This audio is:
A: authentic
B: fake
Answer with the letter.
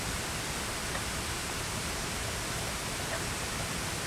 A